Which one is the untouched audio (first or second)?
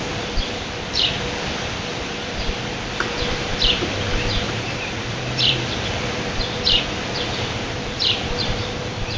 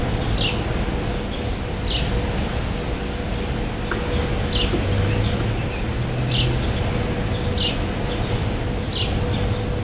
second